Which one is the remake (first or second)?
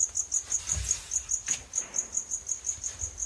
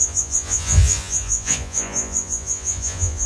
second